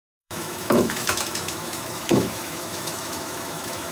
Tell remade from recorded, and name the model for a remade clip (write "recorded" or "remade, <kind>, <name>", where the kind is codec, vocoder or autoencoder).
remade, autoencoder, DAC-VAE